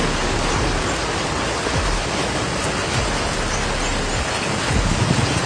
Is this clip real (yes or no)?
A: yes